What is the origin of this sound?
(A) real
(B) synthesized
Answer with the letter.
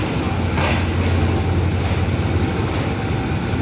A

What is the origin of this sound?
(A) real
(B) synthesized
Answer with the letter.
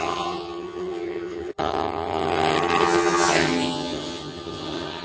B